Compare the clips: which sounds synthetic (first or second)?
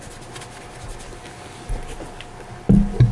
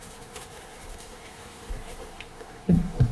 second